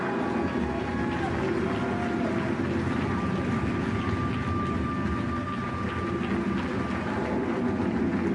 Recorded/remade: recorded